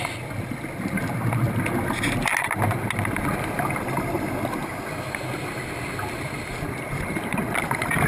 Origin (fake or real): real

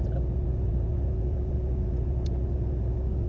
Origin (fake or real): real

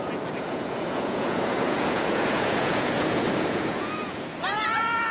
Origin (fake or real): fake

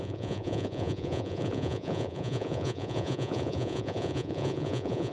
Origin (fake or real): fake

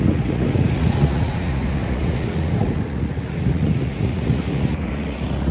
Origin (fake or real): fake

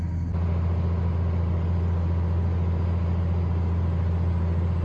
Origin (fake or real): real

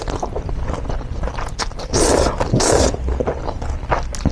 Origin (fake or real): real